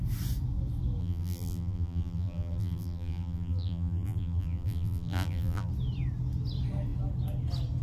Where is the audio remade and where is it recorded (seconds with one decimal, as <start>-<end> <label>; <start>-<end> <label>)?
0.0-1.0 recorded; 1.0-5.7 remade; 5.7-7.8 recorded